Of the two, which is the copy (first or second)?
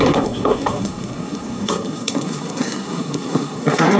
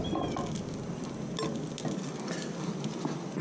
first